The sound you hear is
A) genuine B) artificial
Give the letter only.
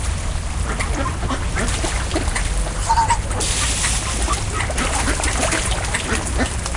A